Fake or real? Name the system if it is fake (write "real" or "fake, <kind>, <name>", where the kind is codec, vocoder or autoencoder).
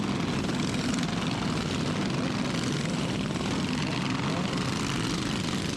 real